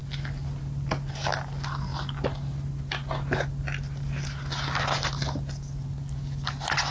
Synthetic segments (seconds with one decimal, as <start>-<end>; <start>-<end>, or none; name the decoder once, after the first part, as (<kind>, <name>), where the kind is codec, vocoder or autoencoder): none